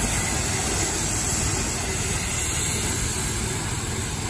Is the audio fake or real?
real